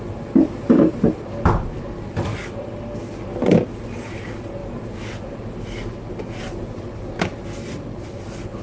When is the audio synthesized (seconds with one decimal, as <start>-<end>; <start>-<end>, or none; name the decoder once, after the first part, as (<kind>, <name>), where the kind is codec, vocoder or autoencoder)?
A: none